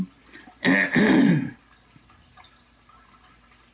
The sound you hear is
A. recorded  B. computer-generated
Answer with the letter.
A